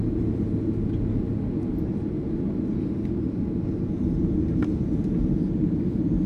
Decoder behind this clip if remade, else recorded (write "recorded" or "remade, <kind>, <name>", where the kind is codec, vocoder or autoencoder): recorded